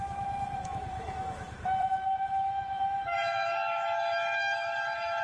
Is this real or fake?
fake